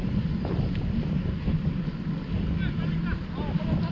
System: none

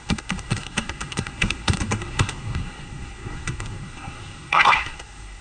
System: codec, SNAC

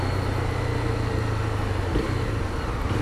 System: none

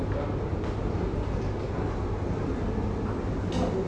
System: none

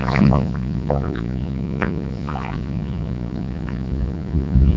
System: vocoder, Vocos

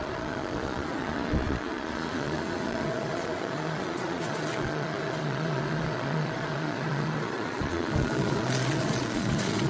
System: vocoder, Vocos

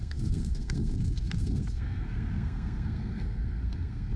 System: codec, SNAC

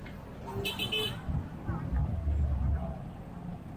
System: none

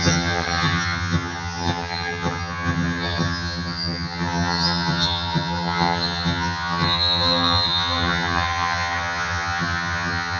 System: vocoder, HiFi-GAN